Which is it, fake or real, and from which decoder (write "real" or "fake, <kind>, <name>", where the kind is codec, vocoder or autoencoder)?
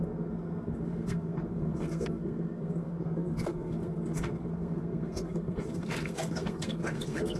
fake, codec, SNAC